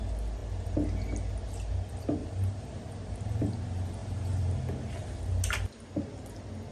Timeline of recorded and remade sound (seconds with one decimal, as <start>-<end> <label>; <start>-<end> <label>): 0.0-2.2 recorded; 2.2-3.6 remade; 3.6-4.0 recorded; 4.0-4.6 remade; 4.6-6.7 recorded